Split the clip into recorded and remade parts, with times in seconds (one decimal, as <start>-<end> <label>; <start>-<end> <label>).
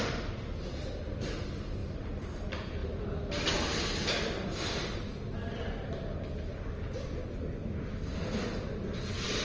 0.0-9.4 recorded